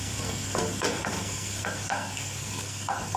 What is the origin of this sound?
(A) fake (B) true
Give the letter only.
A